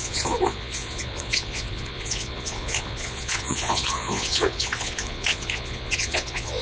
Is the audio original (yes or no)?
no